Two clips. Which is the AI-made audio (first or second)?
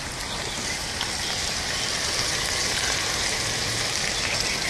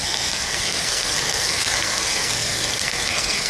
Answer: second